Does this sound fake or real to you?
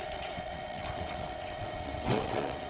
fake